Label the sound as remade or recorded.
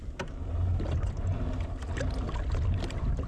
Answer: recorded